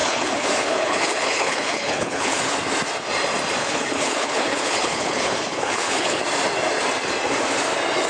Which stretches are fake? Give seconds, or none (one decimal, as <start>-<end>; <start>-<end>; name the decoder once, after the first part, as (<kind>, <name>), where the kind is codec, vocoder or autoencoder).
0.0-2.4 (codec, HILCodec); 3.6-6.2